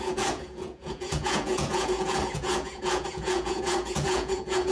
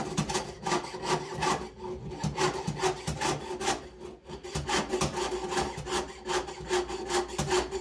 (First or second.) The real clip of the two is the second